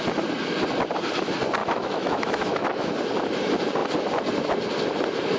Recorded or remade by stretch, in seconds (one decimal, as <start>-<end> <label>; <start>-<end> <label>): 0.0-1.6 recorded; 1.6-2.9 remade; 2.9-5.4 recorded